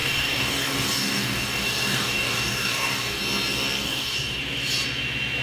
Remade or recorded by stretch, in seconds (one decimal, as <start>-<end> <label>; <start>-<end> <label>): 0.0-3.2 remade; 3.2-3.8 recorded; 3.8-4.4 remade; 4.4-5.4 recorded